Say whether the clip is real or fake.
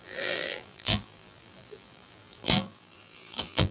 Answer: fake